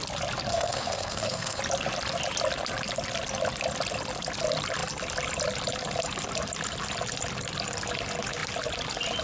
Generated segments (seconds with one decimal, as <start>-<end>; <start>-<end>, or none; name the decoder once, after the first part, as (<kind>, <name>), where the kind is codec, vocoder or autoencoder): 0.5-1.6 (codec, SNAC)